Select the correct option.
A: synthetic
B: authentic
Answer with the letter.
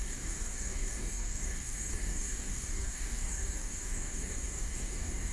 A